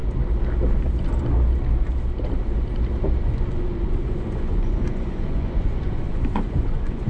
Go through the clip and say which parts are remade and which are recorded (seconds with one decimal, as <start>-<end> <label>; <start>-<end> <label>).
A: 0.0-3.2 recorded; 3.2-7.1 remade